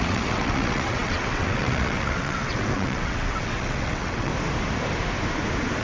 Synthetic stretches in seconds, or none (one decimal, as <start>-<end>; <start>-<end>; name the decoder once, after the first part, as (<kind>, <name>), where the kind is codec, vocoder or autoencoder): 0.0-4.3 (vocoder, WaveNeXt)